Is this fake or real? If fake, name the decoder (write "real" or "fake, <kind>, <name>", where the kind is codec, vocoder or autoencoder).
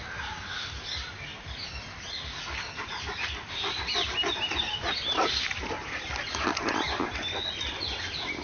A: real